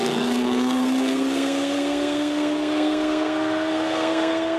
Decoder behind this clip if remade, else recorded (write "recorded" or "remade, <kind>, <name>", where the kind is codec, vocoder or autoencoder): remade, codec, SNAC